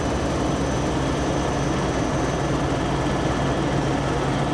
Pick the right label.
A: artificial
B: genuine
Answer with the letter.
B